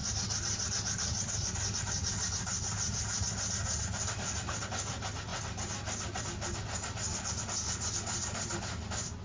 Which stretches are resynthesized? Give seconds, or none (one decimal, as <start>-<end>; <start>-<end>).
none